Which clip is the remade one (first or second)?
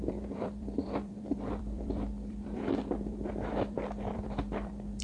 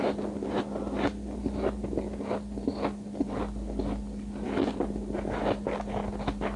first